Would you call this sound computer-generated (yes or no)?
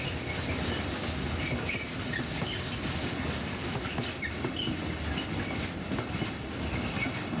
no